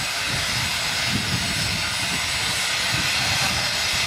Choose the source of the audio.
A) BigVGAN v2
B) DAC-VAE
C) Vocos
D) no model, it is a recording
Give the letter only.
D